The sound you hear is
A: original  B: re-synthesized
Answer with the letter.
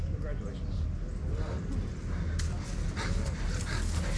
A